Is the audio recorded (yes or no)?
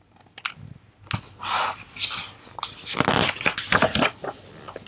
yes